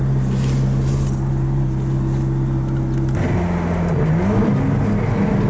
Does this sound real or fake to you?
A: real